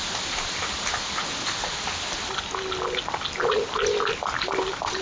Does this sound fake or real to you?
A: real